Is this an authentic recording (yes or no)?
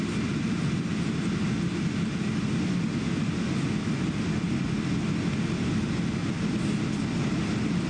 yes